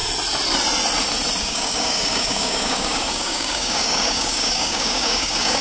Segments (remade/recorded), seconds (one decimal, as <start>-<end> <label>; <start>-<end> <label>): 0.0-1.4 recorded; 1.4-5.6 remade

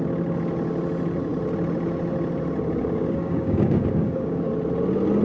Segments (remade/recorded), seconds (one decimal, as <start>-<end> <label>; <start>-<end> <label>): 0.0-2.8 recorded; 2.8-4.5 remade; 4.5-5.2 recorded

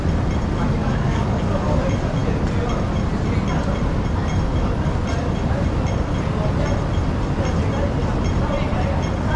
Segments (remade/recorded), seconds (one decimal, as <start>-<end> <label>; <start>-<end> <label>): 0.0-0.8 recorded; 0.8-1.8 remade; 1.8-9.4 recorded

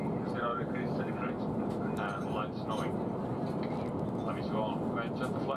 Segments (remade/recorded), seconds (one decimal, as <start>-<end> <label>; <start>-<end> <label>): 0.0-0.5 recorded; 0.5-1.3 remade; 1.3-5.6 recorded